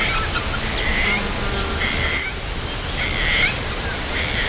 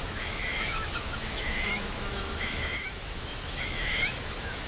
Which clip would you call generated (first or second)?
second